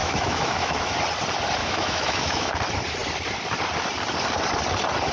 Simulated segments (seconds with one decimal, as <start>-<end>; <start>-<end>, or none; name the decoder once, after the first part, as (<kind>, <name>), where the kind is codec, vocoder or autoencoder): 0.0-0.9 (autoencoder, DAC-VAE); 1.6-2.5

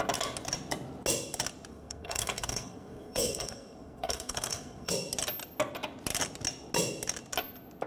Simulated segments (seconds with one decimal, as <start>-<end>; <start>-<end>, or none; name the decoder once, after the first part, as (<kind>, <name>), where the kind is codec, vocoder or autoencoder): 1.7-4.9 (codec, SNAC)

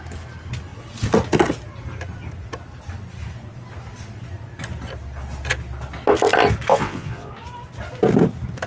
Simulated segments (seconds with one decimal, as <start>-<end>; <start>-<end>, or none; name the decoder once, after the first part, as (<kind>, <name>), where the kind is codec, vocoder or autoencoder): 6.7-7.3 (vocoder, Vocos)

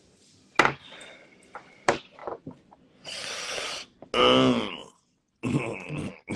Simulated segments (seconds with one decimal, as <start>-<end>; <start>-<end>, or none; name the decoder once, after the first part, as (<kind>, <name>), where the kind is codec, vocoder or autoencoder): none